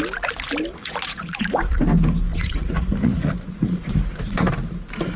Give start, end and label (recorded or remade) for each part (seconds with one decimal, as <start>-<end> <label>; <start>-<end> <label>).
0.0-0.8 recorded; 0.8-1.8 remade; 1.8-2.3 recorded; 2.3-4.5 remade; 4.5-5.2 recorded